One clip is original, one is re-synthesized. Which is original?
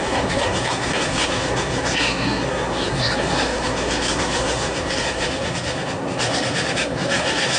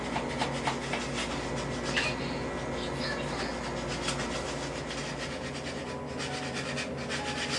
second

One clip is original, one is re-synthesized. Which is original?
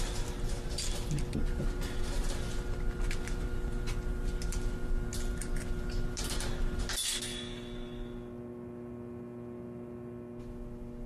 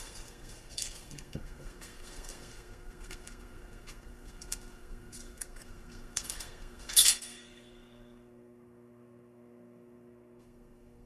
first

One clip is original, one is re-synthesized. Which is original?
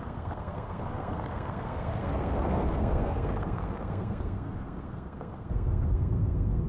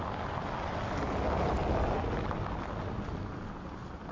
second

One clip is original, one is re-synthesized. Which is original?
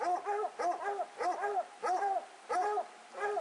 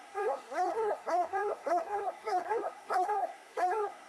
first